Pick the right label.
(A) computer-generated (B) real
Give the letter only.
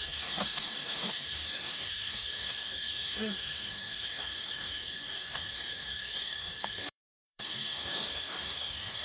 A